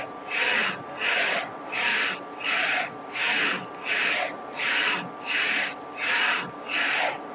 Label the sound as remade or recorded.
recorded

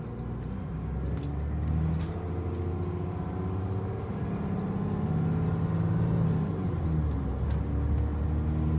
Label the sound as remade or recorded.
recorded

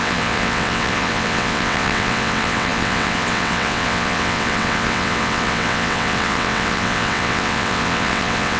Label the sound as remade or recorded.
remade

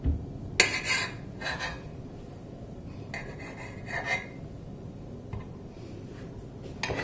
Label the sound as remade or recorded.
recorded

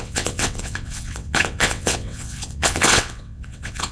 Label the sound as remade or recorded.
remade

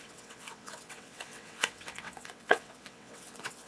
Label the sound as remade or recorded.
remade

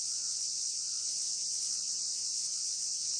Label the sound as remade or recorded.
remade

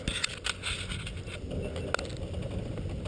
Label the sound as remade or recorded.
recorded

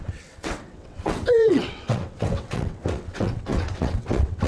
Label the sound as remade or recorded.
remade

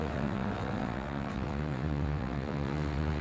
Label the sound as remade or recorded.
remade